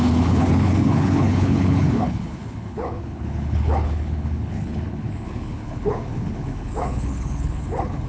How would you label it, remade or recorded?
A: remade